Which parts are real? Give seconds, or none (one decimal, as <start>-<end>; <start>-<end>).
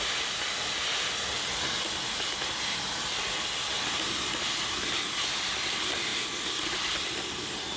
0.0-7.8